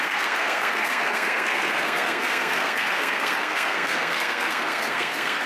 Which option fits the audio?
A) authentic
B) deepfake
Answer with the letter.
B